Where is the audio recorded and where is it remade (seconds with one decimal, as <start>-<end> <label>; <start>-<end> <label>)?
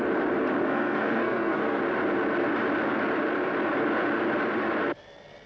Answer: 0.0-0.6 recorded; 0.6-1.8 remade; 1.8-5.5 recorded